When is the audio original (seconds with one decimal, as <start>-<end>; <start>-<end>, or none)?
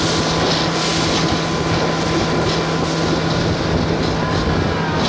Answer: 0.0-5.1